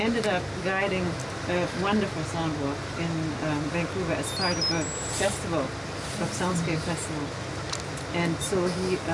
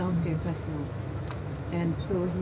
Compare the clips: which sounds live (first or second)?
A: first